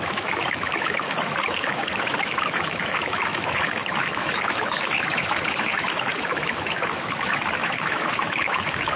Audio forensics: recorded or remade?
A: remade